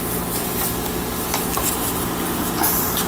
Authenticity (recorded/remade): recorded